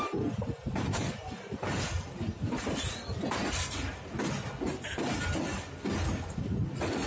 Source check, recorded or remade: recorded